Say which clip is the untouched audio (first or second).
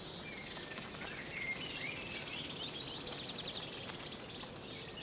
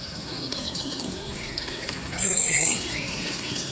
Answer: first